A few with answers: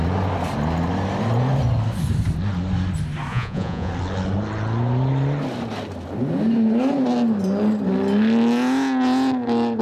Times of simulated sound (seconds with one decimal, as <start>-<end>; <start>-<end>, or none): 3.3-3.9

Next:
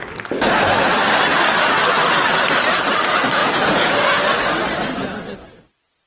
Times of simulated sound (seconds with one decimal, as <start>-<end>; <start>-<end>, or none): 3.4-4.2

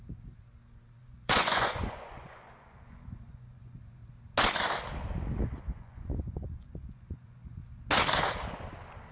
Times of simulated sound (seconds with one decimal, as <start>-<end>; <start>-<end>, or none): 1.0-4.0; 5.6-7.6

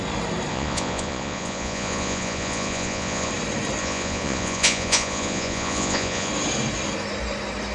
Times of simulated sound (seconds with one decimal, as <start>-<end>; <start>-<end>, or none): 0.5-3.3; 3.8-6.3